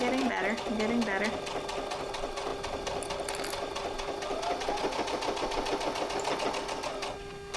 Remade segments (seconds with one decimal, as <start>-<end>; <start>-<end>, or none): none